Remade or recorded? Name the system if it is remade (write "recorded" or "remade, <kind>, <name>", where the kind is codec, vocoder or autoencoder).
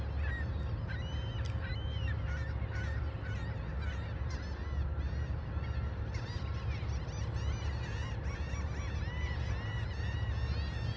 recorded